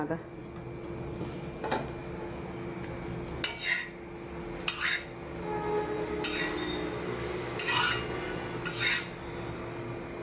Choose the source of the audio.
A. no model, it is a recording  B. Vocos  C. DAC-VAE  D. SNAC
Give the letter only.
A